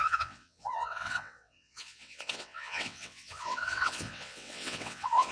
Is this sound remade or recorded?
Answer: remade